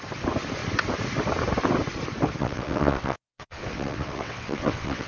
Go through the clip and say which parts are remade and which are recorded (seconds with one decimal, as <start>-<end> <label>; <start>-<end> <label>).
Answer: 0.0-2.4 recorded; 2.4-5.1 remade